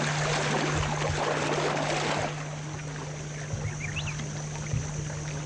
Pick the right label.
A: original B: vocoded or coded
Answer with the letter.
A